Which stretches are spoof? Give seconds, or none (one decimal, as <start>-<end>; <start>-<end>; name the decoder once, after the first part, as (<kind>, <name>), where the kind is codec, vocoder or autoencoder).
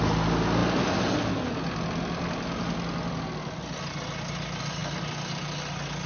none